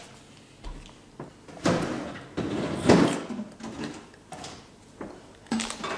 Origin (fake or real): real